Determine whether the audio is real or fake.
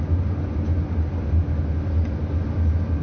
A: real